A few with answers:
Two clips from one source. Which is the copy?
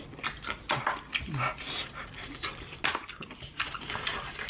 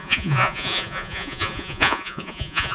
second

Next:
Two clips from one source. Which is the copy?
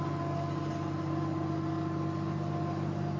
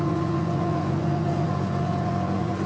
second